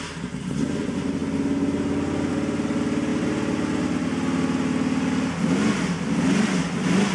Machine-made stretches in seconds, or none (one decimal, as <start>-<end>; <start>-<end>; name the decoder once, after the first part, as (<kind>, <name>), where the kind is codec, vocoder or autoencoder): none